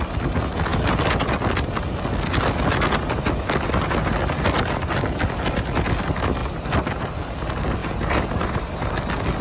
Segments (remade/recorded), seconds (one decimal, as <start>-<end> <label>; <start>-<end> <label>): 0.0-6.4 recorded; 6.4-7.1 remade; 7.1-7.8 recorded; 7.8-8.9 remade; 8.9-9.4 recorded